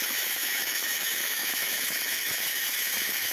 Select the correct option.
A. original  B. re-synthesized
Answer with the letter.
B